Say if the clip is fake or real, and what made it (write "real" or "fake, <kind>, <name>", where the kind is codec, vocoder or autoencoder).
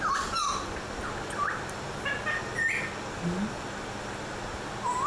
real